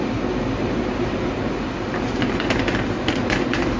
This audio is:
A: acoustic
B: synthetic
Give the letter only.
A